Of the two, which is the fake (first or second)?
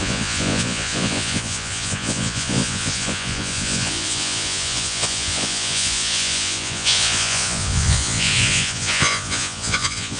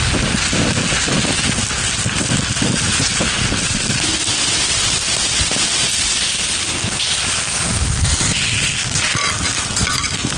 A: first